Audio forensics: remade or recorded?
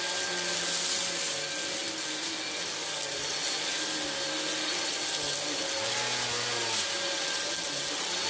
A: recorded